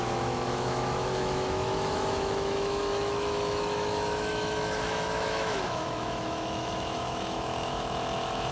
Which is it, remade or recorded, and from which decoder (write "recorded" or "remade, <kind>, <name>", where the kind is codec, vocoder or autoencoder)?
remade, autoencoder, DAC-VAE